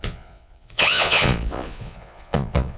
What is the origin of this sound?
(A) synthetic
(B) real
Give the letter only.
A